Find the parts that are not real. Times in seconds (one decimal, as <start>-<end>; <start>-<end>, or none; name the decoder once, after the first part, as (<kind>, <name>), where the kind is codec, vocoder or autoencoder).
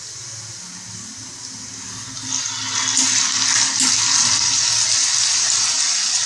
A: none